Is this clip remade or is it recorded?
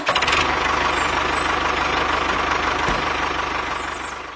recorded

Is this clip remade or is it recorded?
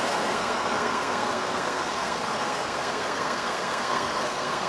remade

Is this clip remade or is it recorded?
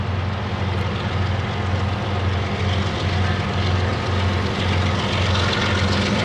recorded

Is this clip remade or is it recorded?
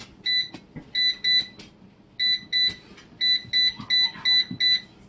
recorded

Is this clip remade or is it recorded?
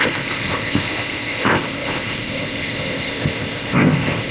remade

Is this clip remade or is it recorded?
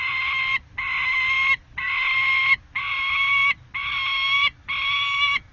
recorded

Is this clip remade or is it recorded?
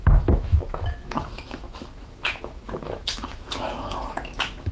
remade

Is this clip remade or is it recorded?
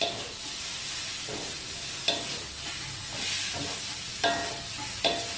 recorded